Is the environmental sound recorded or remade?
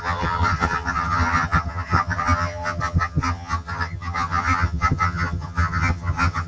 remade